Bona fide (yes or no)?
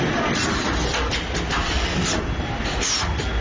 yes